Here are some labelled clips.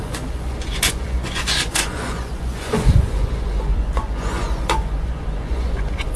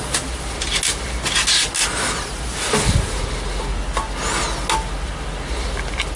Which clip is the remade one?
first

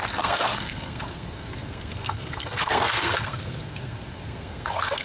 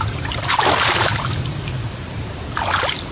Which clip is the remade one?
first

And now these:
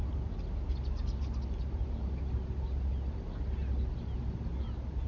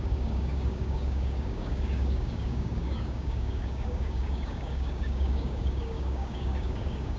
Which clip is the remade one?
second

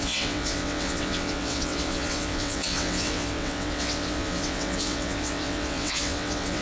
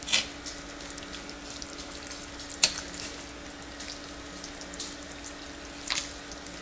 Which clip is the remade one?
first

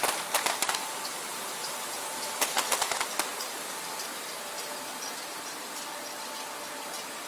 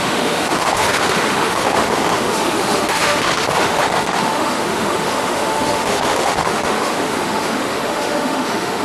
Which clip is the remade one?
second